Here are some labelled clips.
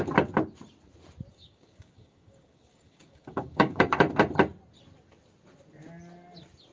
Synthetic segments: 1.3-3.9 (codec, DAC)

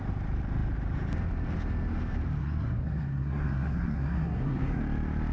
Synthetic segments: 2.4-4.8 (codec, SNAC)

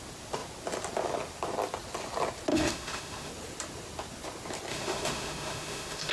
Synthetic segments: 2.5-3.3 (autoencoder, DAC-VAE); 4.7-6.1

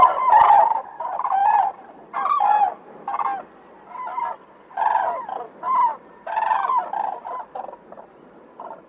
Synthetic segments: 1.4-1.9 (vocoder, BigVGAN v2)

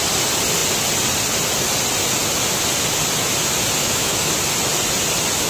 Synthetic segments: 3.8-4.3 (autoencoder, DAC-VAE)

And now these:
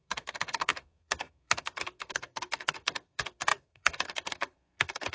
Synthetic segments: 0.0-5.1 (codec, SNAC)